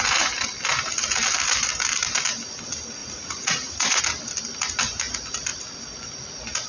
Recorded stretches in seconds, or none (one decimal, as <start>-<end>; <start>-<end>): 0.0-3.0; 4.0-6.7